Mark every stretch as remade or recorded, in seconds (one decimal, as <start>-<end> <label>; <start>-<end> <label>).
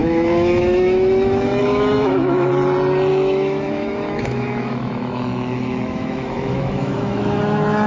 0.0-2.5 remade; 2.5-3.1 recorded; 3.1-7.4 remade; 7.4-7.9 recorded